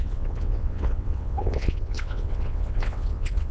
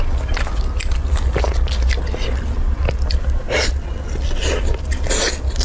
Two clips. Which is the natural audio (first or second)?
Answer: second